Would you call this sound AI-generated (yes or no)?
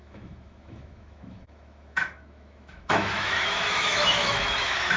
yes